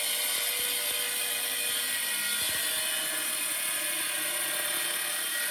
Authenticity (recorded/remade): recorded